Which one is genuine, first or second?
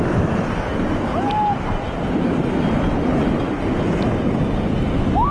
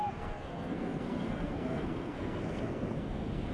first